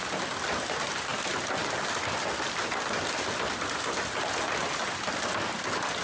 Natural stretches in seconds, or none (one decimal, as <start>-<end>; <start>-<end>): 0.0-6.0